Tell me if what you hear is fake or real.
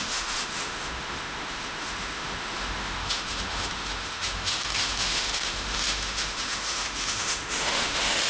fake